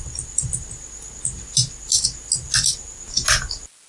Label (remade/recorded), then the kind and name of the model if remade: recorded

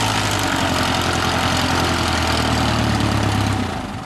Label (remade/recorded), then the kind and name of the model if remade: recorded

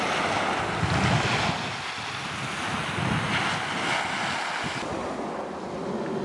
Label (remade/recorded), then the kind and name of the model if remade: recorded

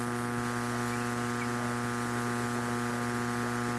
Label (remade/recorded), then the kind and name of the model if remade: recorded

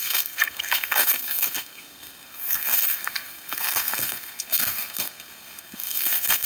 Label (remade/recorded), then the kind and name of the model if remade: remade, codec, SNAC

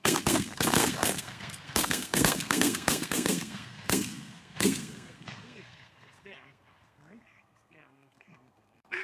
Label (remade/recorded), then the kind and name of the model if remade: remade, codec, SNAC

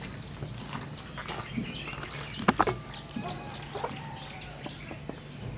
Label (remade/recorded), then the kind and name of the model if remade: recorded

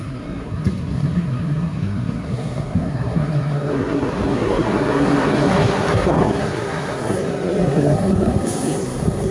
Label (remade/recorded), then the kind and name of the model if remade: remade, codec, SNAC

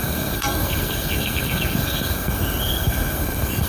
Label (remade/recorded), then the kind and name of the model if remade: remade, codec, SNAC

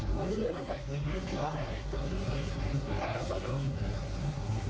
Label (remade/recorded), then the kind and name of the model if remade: remade, codec, SNAC